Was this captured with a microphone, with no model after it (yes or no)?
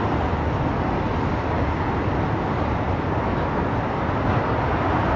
yes